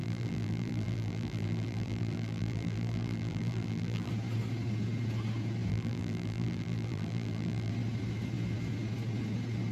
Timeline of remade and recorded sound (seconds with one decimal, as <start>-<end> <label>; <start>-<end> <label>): 0.0-4.1 remade; 4.1-5.7 recorded; 5.7-7.7 remade; 7.7-9.7 recorded